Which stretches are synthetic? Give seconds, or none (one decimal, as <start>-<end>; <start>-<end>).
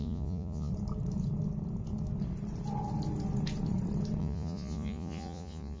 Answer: 0.0-0.7; 4.2-5.8